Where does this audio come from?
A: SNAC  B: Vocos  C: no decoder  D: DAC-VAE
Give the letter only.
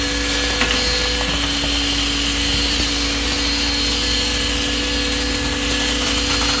C